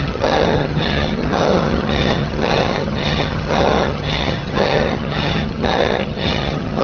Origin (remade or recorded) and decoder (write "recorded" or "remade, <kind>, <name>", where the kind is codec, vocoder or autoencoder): remade, vocoder, HiFi-GAN